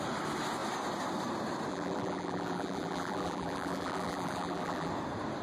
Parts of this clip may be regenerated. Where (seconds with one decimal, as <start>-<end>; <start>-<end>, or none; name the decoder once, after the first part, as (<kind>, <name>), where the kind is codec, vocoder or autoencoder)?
1.7-4.9 (vocoder, BigVGAN v2)